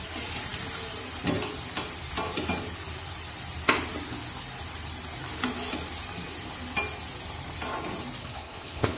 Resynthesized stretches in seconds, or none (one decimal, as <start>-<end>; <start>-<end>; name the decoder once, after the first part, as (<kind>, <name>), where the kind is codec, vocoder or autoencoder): 8.2-9.0 (codec, HILCodec)